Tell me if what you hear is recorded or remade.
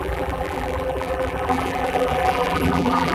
remade